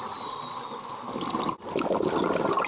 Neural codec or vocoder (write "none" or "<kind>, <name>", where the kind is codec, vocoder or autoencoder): none